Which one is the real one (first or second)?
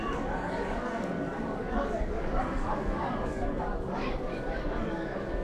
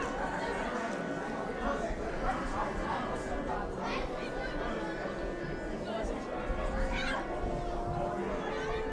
second